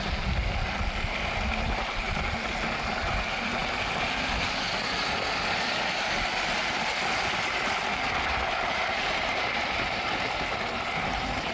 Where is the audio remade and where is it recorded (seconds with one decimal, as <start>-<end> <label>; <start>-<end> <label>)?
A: 0.0-11.5 recorded